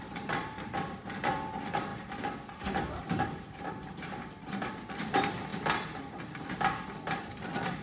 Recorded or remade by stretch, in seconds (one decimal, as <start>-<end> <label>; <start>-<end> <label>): 0.0-1.9 remade; 1.9-3.0 recorded; 3.0-5.5 remade; 5.5-6.2 recorded; 6.2-7.8 remade